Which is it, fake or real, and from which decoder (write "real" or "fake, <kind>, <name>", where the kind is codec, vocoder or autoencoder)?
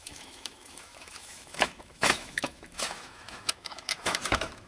fake, autoencoder, DAC-VAE